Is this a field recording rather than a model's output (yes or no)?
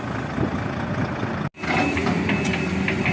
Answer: yes